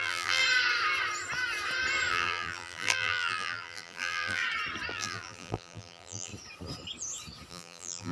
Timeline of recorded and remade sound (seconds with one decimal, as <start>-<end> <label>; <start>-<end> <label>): 0.0-0.4 remade; 0.4-2.1 recorded; 2.1-4.4 remade; 4.4-4.9 recorded; 4.9-6.3 remade; 6.3-7.5 recorded; 7.5-8.1 remade